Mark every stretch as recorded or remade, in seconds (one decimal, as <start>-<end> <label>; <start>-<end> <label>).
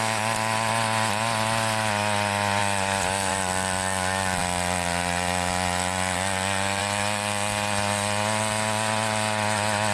0.0-9.9 recorded